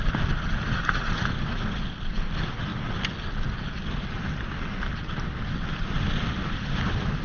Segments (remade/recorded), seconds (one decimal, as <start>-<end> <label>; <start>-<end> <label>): 0.0-7.2 recorded